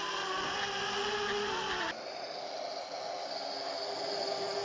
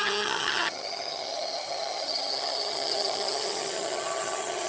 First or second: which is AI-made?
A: second